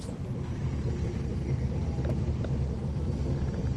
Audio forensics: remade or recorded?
remade